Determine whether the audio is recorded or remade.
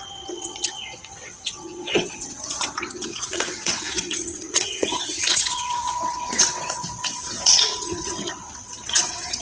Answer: remade